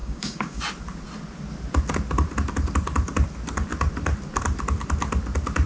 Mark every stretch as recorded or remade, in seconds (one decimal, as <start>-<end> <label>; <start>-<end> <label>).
0.0-0.6 remade; 0.6-5.7 recorded